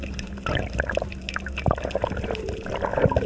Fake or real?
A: fake